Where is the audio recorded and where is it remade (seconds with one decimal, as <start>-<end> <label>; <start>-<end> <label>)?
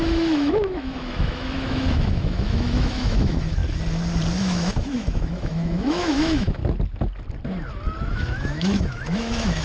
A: 0.0-3.6 remade; 3.6-4.4 recorded; 4.4-6.6 remade; 6.6-8.1 recorded; 8.1-9.6 remade